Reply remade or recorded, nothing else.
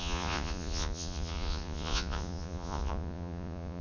remade